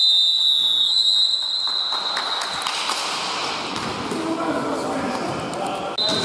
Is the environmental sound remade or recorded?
recorded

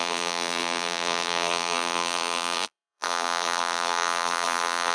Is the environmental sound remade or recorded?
remade